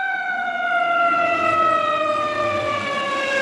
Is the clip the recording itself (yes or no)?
no